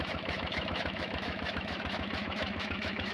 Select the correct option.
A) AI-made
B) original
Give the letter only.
A